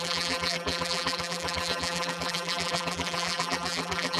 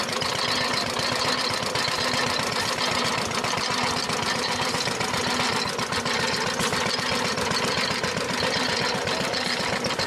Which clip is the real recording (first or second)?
second